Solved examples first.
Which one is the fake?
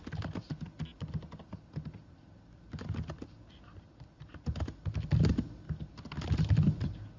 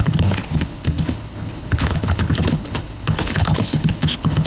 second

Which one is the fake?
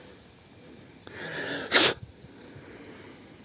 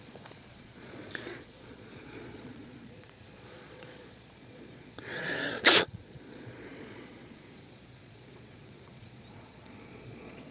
second